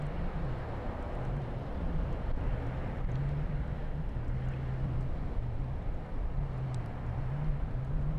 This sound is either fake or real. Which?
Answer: real